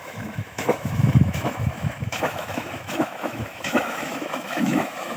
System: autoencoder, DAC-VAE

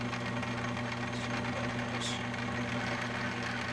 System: none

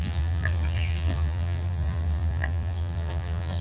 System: vocoder, BigVGAN v2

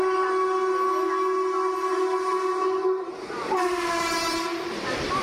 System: none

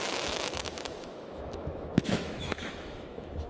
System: autoencoder, DAC-VAE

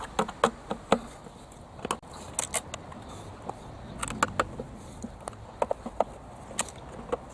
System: none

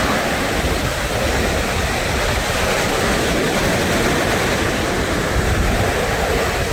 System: none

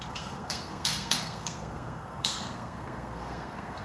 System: codec, SNAC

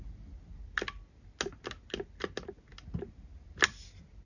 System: none